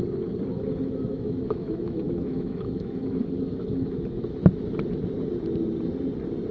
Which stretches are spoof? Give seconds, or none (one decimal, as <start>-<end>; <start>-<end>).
0.5-4.4